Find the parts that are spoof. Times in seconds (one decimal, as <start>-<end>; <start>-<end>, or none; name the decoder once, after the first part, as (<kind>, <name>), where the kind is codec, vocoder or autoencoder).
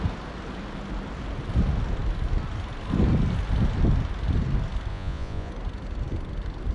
4.9-5.5 (vocoder, Vocos)